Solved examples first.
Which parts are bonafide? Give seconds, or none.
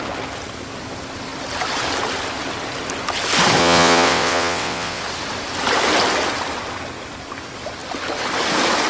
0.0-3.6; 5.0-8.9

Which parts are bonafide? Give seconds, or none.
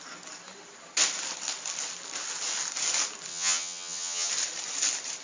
0.0-3.3; 4.3-5.2